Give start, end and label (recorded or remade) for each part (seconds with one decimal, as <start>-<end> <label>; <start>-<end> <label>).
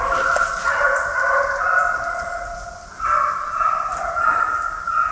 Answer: 0.0-5.1 recorded